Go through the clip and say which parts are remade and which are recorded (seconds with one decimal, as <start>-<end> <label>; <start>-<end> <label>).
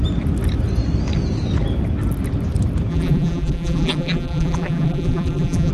0.0-2.9 recorded; 2.9-5.7 remade